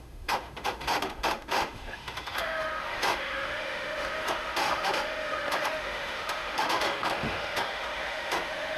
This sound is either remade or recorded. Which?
remade